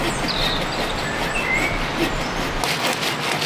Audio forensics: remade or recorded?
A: recorded